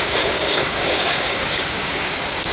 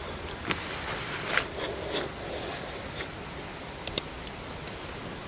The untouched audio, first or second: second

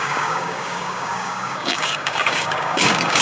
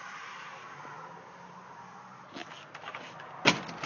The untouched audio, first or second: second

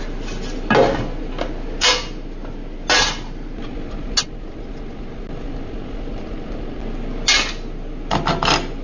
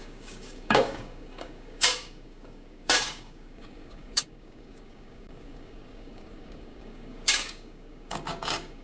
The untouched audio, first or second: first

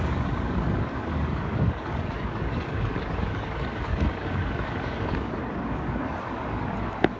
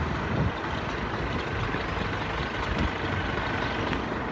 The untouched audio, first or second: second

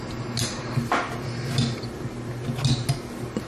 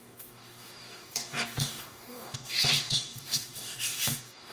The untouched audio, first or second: first